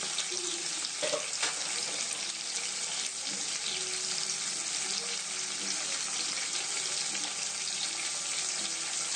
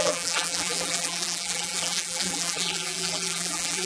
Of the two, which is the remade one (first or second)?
second